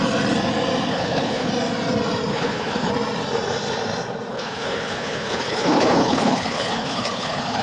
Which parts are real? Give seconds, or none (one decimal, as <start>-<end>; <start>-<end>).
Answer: 0.0-0.9; 1.5-2.3; 2.9-4.3

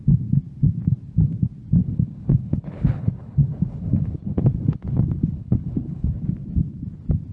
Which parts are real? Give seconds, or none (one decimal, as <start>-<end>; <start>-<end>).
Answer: 0.0-1.8; 6.2-7.3

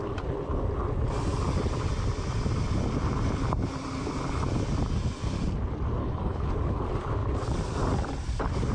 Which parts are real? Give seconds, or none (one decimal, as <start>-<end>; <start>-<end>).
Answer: 0.0-6.0; 6.5-8.7

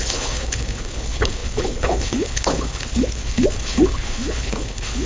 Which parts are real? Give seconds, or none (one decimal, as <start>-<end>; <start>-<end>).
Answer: none